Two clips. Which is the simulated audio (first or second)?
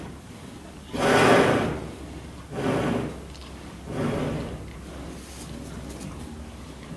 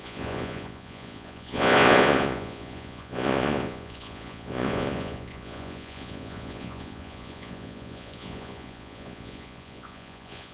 second